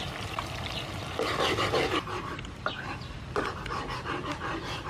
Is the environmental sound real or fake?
real